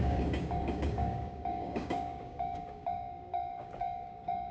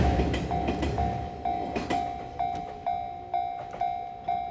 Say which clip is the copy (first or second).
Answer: first